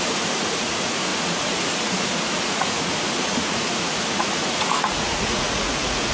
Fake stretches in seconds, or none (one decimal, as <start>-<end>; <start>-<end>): 0.0-6.1